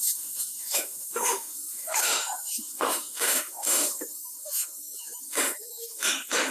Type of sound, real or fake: fake